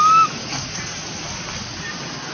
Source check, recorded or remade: recorded